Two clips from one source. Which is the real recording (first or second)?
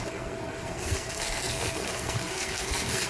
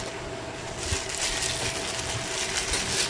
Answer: second